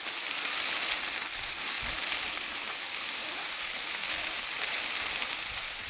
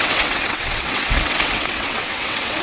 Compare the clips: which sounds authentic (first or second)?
first